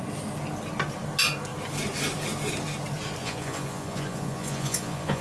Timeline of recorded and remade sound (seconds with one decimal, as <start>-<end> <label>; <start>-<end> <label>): 0.0-3.2 recorded; 3.2-5.2 remade